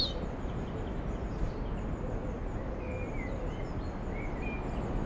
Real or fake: real